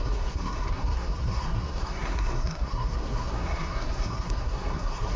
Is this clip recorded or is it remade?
remade